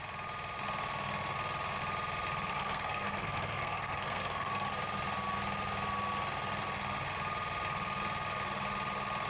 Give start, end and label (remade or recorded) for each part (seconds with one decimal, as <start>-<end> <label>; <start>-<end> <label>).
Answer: 0.0-2.5 recorded; 2.5-4.7 remade; 4.7-9.3 recorded